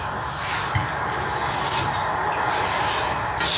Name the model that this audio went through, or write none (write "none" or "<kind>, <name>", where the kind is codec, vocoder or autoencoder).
none